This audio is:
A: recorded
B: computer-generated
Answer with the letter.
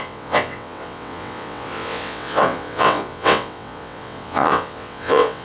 B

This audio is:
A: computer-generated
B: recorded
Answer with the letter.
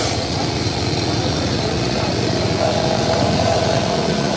A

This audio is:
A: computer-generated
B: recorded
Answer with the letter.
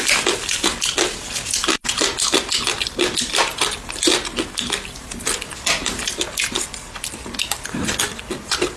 B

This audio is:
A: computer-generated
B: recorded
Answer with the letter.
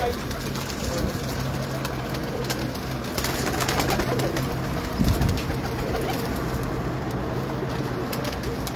B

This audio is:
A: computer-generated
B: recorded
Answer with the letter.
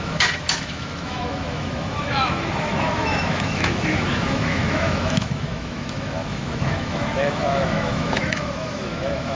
A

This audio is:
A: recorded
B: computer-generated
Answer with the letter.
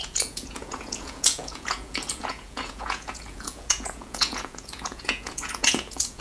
B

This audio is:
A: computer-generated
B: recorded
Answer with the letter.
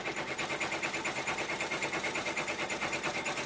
B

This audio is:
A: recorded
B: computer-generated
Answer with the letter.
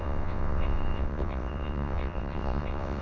B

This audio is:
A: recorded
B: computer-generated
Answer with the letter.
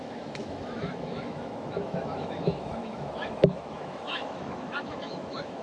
B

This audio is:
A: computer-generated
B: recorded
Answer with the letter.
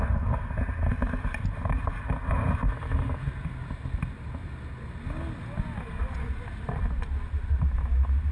B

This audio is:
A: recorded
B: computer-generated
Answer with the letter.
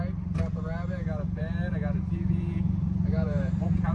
B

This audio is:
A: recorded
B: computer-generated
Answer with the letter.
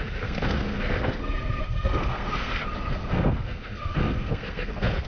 B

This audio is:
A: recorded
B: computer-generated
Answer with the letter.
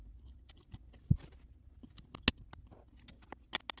A